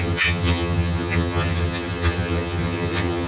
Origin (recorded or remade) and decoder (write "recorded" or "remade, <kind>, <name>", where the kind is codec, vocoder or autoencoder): remade, vocoder, HiFi-GAN